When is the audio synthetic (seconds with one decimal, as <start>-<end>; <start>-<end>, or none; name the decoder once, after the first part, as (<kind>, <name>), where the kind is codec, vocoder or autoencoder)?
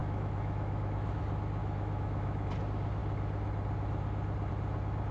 0.0-1.2 (autoencoder, DAC-VAE); 1.6-2.5